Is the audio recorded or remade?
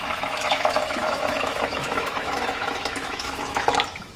remade